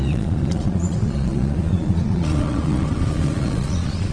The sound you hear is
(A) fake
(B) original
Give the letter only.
A